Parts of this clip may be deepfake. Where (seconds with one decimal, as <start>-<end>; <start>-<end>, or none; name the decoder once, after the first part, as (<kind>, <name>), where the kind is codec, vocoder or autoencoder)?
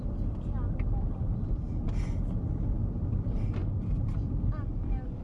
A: none